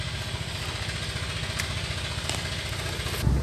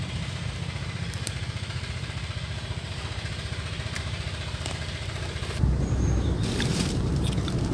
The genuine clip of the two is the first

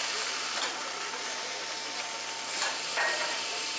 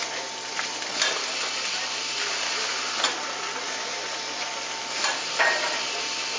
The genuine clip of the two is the second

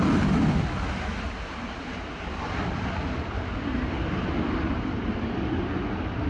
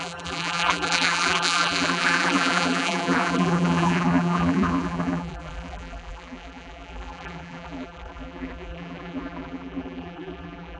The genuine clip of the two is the first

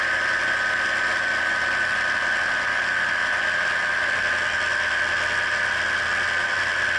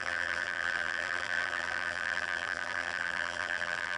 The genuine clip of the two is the first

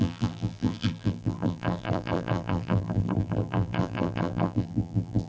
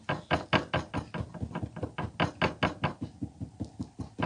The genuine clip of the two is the second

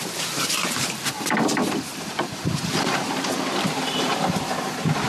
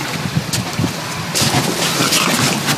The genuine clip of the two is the second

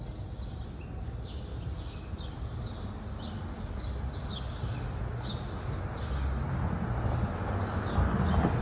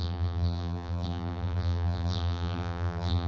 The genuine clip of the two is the first